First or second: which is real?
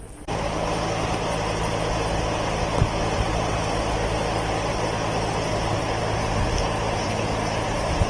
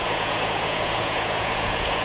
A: first